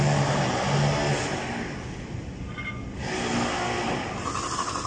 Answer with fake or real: real